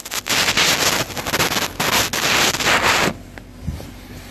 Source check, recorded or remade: recorded